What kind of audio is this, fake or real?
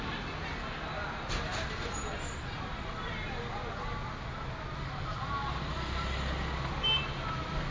real